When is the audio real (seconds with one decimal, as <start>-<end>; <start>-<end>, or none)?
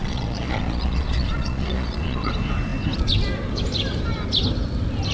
2.3-5.1